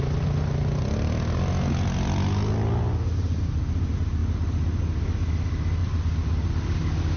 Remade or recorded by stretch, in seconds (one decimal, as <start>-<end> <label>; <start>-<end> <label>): 0.0-5.8 recorded; 5.8-6.8 remade; 6.8-7.2 recorded